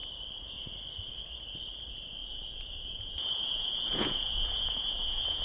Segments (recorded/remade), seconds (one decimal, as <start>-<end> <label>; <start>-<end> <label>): 0.0-2.2 recorded; 2.2-5.4 remade